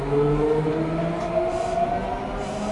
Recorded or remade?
recorded